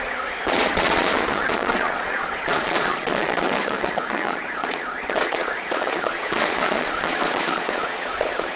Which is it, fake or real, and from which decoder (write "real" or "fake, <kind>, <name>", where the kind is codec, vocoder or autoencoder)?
fake, vocoder, Vocos